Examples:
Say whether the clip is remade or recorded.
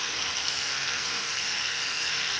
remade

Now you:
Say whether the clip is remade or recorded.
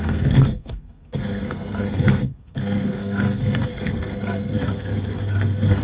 remade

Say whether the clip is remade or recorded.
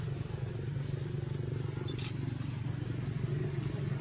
recorded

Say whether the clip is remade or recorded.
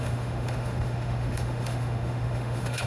remade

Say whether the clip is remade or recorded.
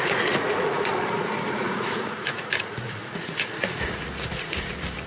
remade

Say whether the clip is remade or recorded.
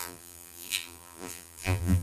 remade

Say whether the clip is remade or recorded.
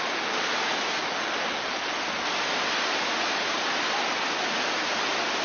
recorded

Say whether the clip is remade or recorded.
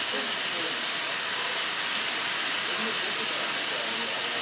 recorded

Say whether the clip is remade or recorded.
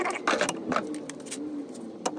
recorded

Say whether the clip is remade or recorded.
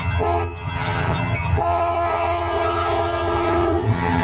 remade